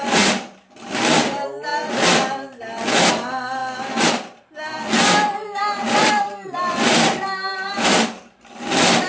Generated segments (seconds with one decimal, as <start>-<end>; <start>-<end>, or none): none